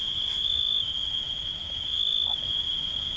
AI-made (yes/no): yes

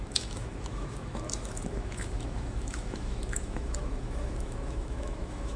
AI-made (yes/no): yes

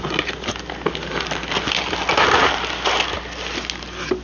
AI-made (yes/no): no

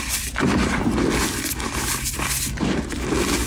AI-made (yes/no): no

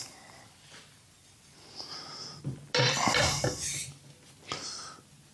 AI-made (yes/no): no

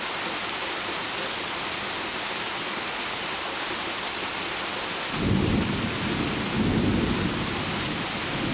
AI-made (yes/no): no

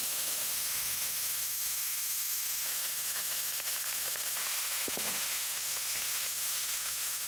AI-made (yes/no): yes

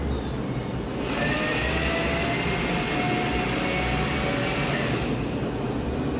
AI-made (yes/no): no